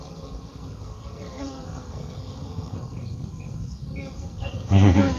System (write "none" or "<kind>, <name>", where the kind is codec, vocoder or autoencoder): codec, SNAC